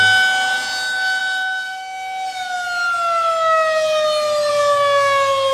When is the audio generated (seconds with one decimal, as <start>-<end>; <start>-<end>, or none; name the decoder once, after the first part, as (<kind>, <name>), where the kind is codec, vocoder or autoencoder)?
none